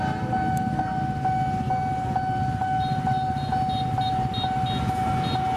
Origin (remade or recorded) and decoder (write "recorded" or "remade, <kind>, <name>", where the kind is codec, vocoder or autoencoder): recorded